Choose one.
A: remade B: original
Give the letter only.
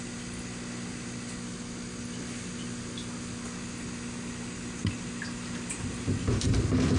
B